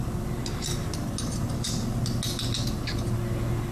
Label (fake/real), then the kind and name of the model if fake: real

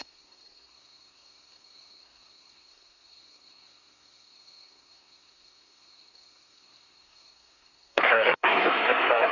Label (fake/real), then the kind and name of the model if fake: fake, codec, SNAC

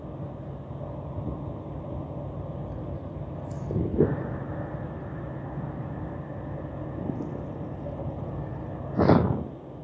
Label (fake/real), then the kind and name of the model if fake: real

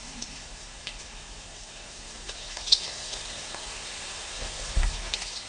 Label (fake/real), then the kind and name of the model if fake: fake, codec, SNAC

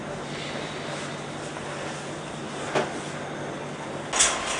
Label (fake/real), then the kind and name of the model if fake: real